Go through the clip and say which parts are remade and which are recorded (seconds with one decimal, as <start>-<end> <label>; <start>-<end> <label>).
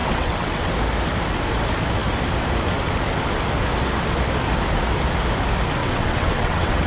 0.0-0.7 remade; 0.7-5.8 recorded; 5.8-6.9 remade